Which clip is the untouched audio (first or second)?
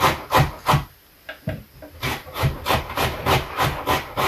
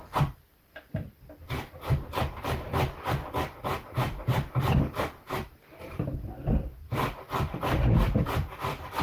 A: first